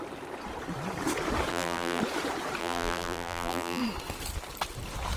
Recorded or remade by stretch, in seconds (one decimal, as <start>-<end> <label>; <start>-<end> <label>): 0.0-1.5 recorded; 1.5-2.0 remade; 2.0-2.6 recorded; 2.6-3.8 remade; 3.8-5.2 recorded

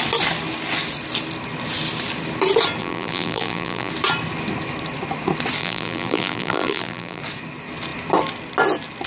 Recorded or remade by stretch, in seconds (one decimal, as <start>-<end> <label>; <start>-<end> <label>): 0.0-2.8 recorded; 2.8-3.9 remade; 3.9-5.6 recorded; 5.6-7.2 remade; 7.2-9.1 recorded

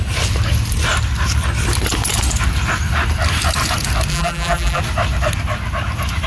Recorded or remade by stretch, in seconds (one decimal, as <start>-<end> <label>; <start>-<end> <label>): 0.0-4.1 recorded; 4.1-4.8 remade; 4.8-6.3 recorded

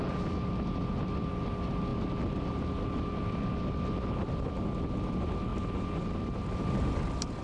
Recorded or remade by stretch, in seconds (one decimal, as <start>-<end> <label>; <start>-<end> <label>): 0.0-7.4 recorded

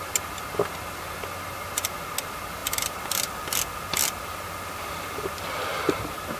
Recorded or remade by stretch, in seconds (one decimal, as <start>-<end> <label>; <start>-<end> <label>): 0.0-2.6 recorded; 2.6-6.0 remade; 6.0-6.4 recorded

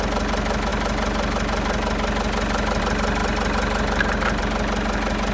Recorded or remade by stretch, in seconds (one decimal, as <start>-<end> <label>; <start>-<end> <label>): 0.0-5.3 recorded